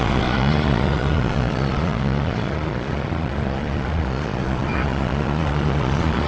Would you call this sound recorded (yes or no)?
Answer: no